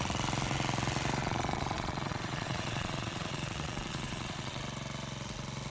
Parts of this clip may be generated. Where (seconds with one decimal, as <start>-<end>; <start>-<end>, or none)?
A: 1.2-4.6